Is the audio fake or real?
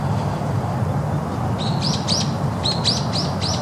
real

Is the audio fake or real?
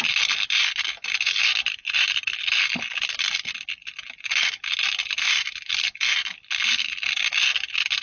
real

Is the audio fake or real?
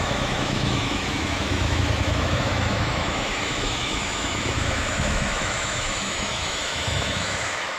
fake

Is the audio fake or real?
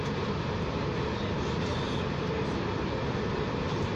real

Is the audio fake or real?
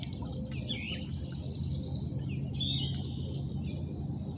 real